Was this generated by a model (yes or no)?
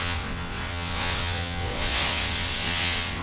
yes